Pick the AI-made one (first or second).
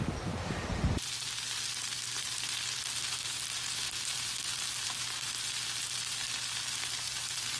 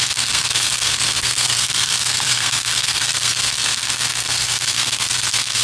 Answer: second